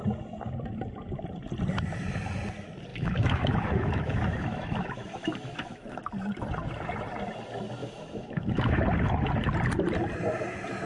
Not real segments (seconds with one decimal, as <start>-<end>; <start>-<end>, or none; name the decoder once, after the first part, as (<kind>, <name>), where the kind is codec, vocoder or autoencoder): 2.9-6.0 (autoencoder, DAC-VAE); 7.8-8.8